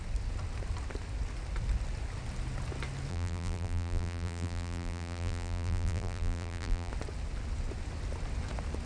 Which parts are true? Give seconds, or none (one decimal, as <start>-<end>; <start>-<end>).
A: 0.0-3.1; 6.9-8.9